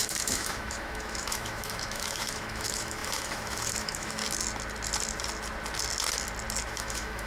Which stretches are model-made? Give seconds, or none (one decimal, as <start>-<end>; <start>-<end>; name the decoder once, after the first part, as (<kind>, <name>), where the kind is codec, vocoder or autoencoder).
0.0-4.2 (autoencoder, DAC-VAE); 6.7-7.3